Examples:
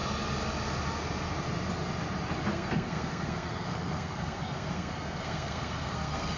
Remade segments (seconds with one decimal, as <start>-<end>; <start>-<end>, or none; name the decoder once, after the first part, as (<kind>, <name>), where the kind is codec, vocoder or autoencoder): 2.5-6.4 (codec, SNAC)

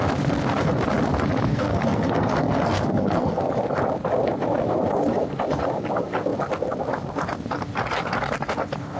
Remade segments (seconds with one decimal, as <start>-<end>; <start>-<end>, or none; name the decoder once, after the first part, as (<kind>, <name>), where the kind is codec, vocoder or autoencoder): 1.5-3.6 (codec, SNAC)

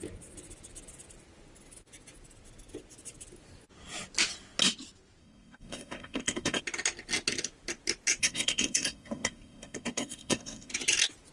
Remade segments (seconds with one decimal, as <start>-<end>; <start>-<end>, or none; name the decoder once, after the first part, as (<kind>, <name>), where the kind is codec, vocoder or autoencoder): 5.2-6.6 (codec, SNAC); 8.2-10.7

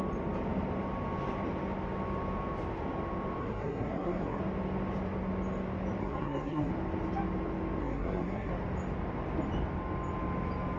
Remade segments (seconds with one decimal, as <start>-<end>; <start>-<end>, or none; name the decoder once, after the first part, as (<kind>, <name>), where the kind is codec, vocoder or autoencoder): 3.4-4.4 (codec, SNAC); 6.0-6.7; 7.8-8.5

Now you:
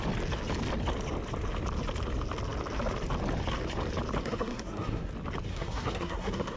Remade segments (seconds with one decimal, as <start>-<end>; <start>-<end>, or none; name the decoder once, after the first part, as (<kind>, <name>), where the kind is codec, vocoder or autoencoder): 4.2-5.1 (codec, SNAC); 5.5-6.6

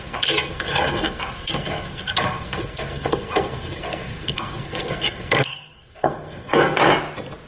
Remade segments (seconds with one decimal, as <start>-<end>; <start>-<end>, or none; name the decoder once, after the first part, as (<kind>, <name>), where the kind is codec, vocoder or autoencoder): 0.0-6.8 (codec, SNAC)

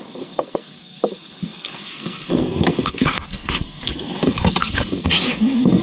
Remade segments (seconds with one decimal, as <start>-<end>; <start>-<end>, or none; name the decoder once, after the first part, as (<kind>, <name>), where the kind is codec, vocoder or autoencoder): 0.0-5.8 (codec, SNAC)